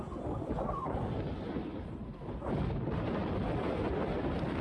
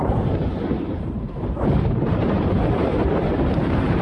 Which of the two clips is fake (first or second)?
second